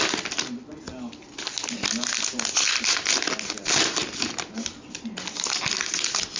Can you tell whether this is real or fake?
real